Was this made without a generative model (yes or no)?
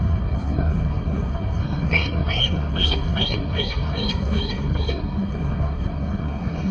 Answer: no